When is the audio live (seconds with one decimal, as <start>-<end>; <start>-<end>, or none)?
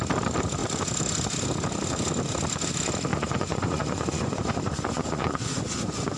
0.0-3.1